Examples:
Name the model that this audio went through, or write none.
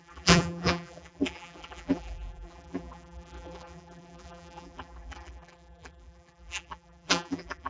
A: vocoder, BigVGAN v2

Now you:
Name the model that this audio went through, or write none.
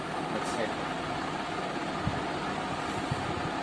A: none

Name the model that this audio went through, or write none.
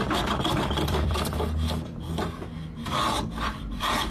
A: vocoder, BigVGAN v2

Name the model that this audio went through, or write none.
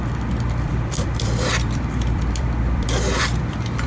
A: vocoder, BigVGAN v2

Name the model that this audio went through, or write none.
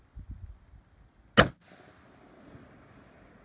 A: none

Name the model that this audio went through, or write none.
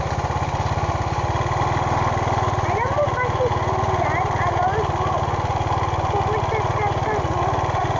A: none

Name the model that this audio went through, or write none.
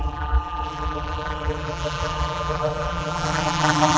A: vocoder, BigVGAN v2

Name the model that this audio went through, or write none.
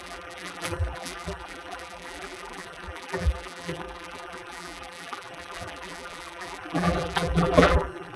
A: vocoder, BigVGAN v2